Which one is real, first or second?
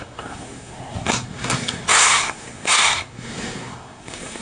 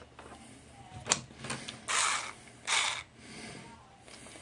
second